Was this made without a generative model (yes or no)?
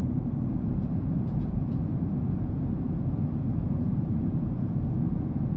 no